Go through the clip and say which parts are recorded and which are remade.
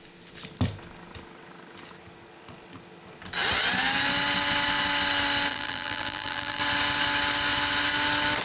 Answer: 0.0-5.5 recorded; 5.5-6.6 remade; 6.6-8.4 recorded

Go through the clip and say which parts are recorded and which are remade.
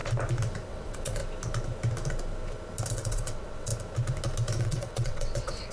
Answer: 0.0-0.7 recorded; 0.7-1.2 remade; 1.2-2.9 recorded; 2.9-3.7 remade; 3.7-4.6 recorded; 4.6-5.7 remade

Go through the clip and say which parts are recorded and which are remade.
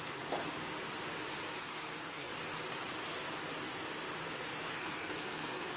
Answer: 0.0-1.6 recorded; 1.6-2.3 remade; 2.3-4.7 recorded; 4.7-5.8 remade